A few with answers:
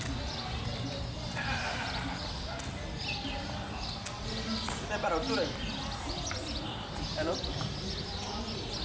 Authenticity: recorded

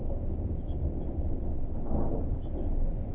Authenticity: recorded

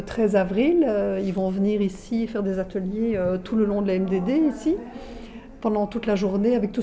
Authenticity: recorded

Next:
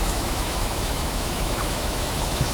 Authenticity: remade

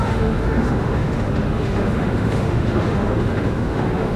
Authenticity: remade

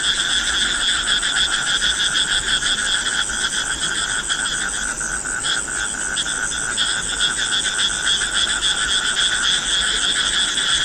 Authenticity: recorded